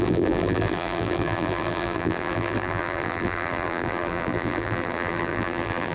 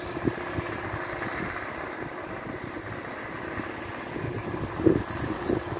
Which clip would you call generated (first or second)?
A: first